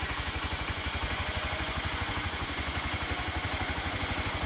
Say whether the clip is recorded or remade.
remade